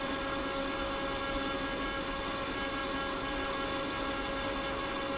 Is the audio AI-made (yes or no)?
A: no